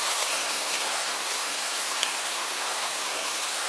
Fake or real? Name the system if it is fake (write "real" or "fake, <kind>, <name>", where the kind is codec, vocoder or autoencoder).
fake, codec, SNAC